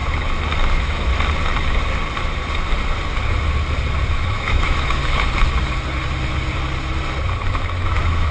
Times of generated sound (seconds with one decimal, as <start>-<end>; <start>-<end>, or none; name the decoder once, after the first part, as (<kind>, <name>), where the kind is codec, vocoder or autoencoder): 0.7-1.1 (autoencoder, DAC-VAE); 4.1-5.0; 7.6-8.3